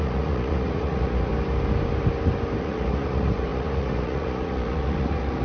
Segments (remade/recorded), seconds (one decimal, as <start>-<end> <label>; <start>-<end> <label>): 0.0-1.3 remade; 1.3-2.6 recorded; 2.6-5.4 remade